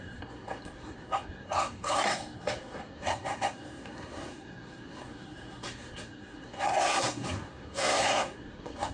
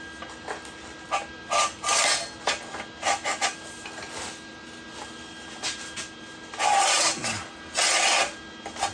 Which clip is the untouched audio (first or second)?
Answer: second